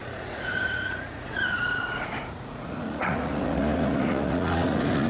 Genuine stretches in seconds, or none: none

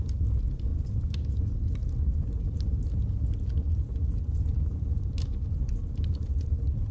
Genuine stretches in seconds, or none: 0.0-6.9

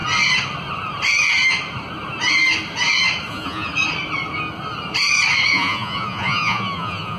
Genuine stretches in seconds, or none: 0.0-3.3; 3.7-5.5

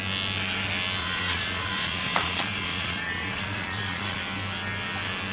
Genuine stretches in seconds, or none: 0.0-1.0; 4.2-5.3